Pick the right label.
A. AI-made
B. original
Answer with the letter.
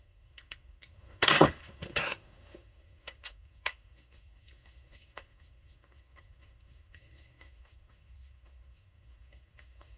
A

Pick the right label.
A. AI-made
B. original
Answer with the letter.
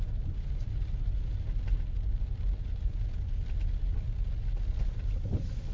B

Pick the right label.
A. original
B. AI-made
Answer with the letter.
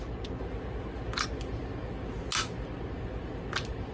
A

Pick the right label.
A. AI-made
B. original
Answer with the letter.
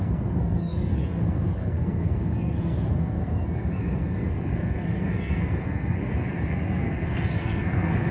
A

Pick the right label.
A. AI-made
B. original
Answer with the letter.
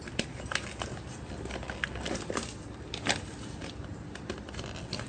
B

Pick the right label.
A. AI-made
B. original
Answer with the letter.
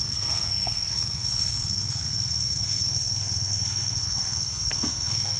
A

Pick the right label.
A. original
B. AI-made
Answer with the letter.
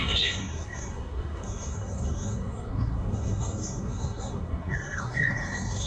B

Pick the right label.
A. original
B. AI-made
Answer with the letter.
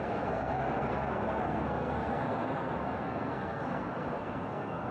B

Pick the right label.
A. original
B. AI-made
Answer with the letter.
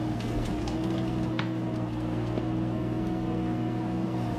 B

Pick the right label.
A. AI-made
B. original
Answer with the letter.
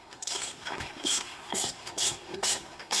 A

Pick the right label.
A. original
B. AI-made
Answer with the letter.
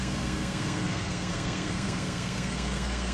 B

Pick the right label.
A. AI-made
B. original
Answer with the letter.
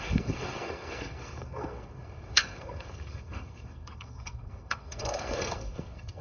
A